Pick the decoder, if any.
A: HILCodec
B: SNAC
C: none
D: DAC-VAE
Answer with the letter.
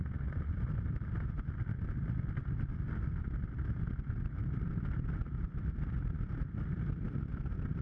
C